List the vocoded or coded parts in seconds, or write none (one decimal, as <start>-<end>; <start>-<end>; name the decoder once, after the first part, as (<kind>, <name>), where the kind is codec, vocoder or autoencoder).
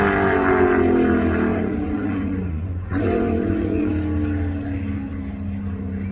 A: 1.5-3.9 (vocoder, Vocos)